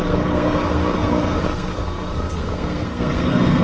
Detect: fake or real fake